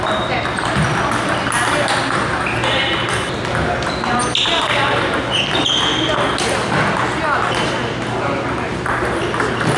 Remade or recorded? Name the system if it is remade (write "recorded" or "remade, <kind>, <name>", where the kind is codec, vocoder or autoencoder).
recorded